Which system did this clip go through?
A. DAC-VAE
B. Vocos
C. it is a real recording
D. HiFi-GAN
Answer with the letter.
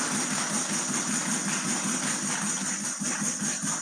C